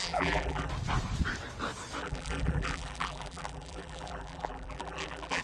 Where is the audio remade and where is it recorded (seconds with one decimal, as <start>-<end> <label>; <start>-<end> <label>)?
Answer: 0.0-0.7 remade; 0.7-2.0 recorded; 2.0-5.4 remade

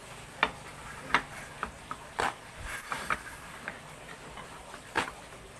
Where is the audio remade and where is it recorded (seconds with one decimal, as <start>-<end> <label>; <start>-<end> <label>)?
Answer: 0.0-5.6 recorded

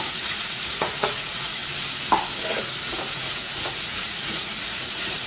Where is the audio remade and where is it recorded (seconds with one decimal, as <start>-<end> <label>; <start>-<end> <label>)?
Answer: 0.0-1.6 remade; 1.6-2.6 recorded; 2.6-5.3 remade